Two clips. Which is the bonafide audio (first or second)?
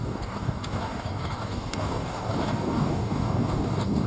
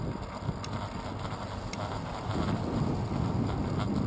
second